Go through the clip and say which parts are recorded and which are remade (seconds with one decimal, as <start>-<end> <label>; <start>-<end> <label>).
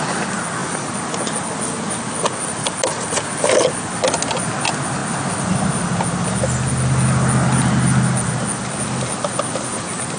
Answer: 0.0-10.2 recorded